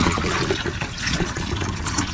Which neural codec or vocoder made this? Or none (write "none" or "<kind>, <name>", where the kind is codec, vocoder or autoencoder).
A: vocoder, Vocos